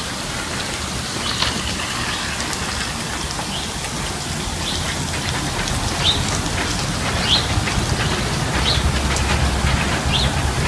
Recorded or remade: recorded